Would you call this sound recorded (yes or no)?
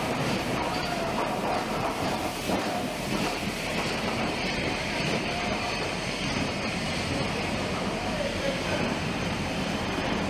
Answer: no